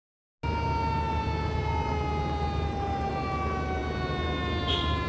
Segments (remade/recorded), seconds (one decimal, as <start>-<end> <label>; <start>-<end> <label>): 0.0-5.1 recorded